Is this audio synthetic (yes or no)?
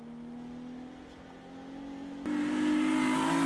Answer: no